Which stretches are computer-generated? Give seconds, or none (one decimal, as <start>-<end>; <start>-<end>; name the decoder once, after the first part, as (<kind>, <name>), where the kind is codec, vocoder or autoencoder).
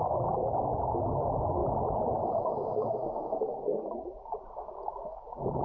1.6-2.4 (vocoder, BigVGAN v2)